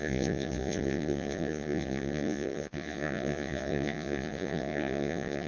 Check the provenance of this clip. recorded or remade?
remade